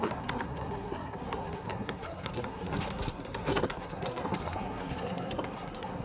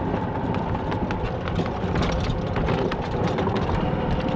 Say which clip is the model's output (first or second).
first